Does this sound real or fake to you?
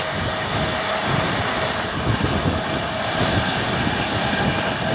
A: real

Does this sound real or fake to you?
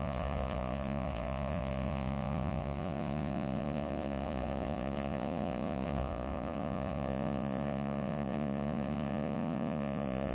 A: fake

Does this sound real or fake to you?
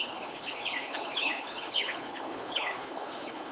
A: fake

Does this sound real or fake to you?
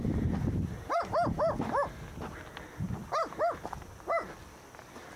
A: real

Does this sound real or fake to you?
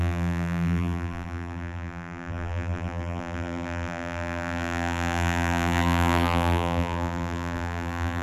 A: fake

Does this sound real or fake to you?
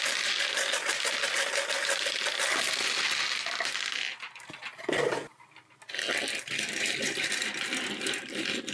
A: real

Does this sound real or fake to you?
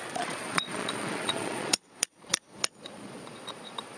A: fake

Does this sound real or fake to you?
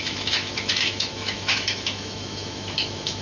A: fake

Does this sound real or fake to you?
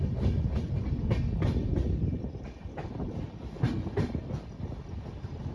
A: real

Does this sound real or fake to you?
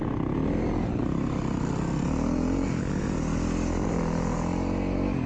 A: real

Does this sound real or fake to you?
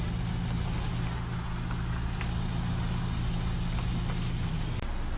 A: real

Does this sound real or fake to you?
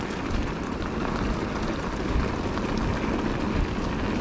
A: real